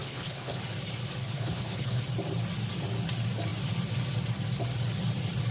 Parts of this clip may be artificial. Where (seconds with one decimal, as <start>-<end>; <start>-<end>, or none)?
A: 0.0-0.6; 1.2-2.0